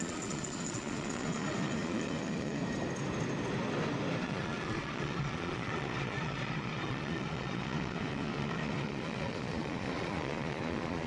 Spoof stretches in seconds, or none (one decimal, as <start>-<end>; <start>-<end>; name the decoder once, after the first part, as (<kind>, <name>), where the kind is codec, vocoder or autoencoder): 0.0-2.6 (vocoder, Vocos); 4.2-11.1